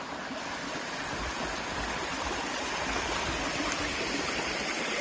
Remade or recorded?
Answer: recorded